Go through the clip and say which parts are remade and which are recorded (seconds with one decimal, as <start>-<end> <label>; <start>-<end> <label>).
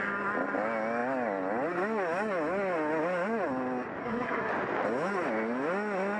0.0-4.0 recorded; 4.0-4.5 remade; 4.5-6.2 recorded